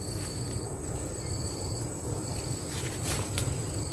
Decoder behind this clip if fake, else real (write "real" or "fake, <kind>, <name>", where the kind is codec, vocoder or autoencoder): real